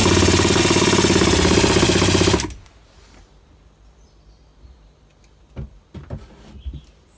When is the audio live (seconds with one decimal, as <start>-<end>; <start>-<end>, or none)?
0.0-7.2